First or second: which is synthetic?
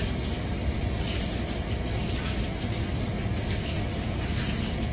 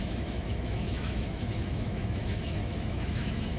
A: second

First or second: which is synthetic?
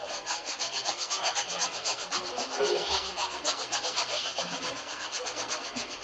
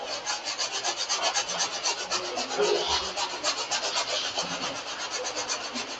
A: first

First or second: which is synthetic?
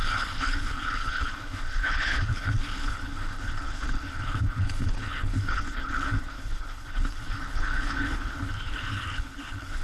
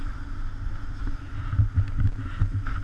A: first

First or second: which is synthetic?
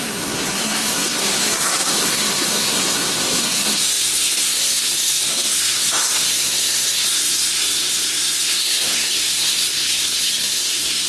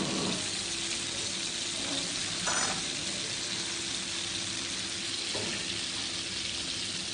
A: first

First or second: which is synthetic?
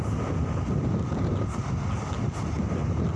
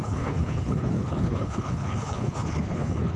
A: second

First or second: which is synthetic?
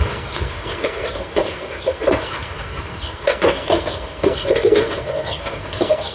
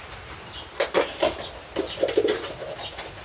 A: first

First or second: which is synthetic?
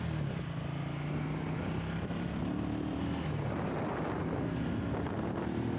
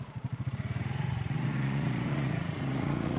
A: second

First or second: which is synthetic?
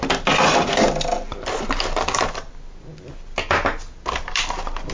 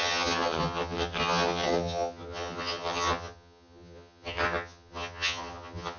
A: second